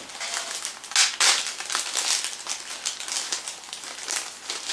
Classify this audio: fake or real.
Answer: real